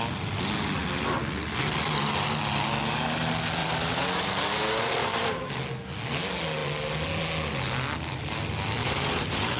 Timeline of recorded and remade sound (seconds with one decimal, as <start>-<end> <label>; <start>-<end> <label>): 0.0-3.6 recorded; 3.6-5.5 remade; 5.5-8.8 recorded; 8.8-9.6 remade